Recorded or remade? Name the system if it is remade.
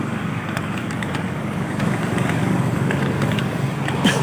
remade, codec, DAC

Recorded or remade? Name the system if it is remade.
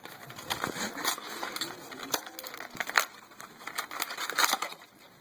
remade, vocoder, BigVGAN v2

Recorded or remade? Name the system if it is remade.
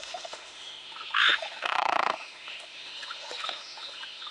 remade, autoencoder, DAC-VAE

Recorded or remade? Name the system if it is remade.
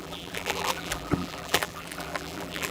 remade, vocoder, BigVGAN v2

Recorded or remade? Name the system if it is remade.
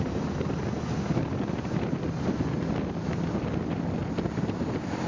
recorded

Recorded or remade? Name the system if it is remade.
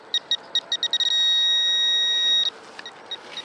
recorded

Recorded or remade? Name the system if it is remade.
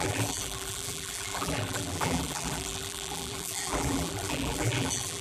remade, vocoder, BigVGAN v2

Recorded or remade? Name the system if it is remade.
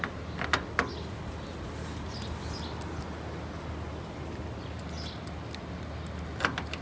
recorded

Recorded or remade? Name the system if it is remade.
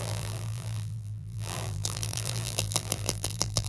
remade, vocoder, BigVGAN v2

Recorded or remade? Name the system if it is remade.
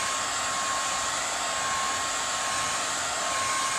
recorded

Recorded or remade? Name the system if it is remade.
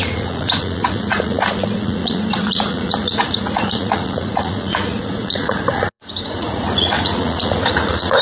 remade, vocoder, Vocos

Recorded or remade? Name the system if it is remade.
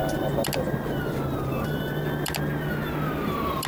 recorded